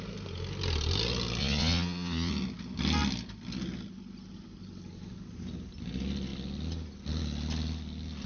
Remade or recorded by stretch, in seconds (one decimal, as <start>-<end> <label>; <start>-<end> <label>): 0.0-1.4 recorded; 1.4-2.3 remade; 2.3-8.3 recorded